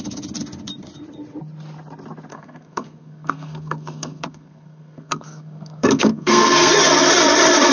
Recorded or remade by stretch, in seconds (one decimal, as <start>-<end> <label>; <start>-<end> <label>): 0.0-2.3 recorded; 2.3-6.7 remade; 6.7-7.7 recorded